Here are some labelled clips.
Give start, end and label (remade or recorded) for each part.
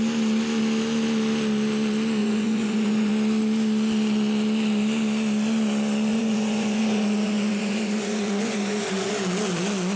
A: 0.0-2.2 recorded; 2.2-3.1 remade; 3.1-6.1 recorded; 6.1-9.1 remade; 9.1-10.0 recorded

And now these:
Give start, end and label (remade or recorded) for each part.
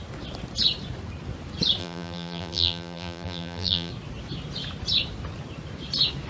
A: 0.0-1.8 recorded; 1.8-3.9 remade; 3.9-6.3 recorded